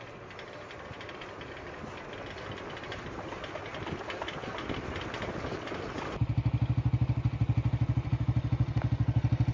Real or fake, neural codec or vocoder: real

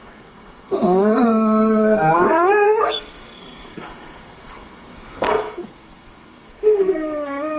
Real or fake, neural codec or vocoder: fake, codec, SNAC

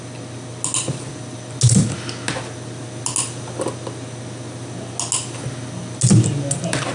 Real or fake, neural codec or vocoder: real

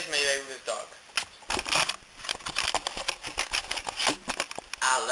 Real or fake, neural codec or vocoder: real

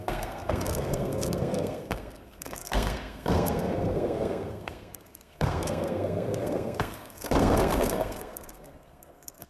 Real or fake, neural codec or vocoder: fake, codec, SNAC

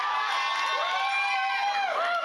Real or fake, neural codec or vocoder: real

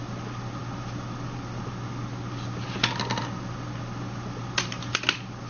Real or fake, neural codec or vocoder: real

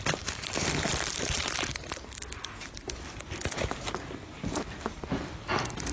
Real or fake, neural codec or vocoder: real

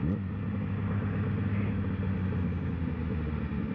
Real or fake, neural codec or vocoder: real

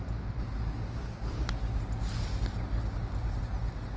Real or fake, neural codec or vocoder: real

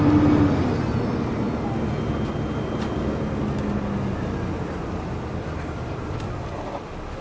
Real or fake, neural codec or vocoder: real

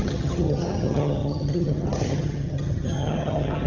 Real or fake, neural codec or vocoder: fake, vocoder, HiFi-GAN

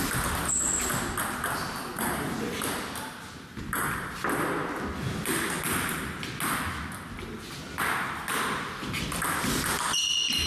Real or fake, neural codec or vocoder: real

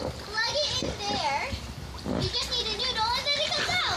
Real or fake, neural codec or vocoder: real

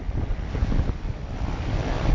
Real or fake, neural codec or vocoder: real